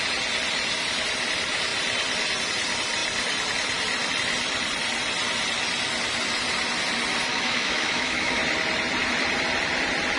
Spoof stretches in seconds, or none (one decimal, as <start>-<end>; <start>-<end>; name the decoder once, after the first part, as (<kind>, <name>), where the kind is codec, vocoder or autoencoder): 7.3-8.4 (autoencoder, DAC-VAE)